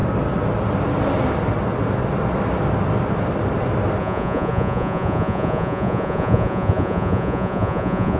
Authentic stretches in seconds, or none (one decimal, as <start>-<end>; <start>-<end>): 0.0-4.0